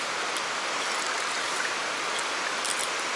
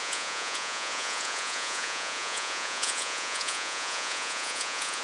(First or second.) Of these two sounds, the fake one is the second